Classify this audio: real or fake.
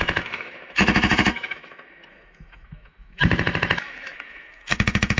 fake